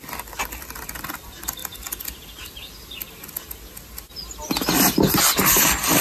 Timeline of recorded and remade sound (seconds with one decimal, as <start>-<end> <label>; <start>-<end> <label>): 0.0-6.0 recorded